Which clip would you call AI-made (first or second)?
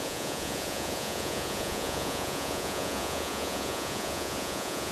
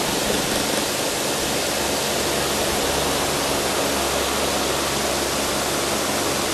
first